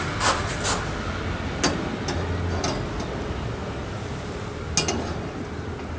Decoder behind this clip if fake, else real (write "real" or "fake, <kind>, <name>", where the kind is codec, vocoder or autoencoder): real